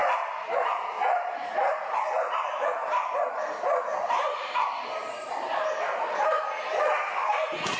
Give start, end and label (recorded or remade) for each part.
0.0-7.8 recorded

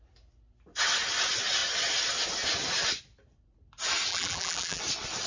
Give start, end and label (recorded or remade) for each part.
0.0-4.1 recorded; 4.1-4.8 remade; 4.8-5.3 recorded

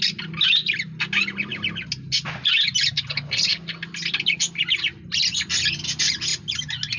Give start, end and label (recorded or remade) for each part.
0.0-7.0 recorded